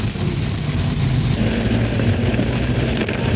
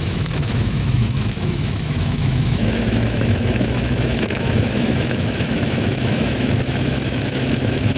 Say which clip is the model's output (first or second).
second